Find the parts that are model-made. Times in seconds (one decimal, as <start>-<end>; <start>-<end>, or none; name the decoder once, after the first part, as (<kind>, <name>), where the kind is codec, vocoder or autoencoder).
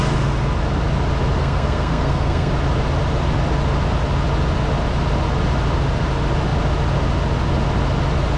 1.4-2.5 (codec, SNAC)